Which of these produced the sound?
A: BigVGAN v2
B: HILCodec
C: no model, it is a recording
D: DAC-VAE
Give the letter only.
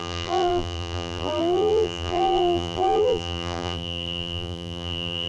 A